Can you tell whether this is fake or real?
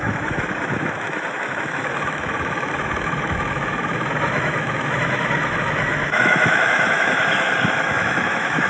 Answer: fake